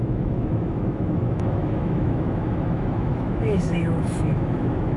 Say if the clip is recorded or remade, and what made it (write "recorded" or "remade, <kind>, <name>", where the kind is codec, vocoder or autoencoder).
remade, autoencoder, DAC-VAE